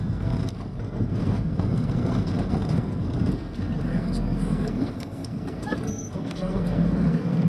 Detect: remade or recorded remade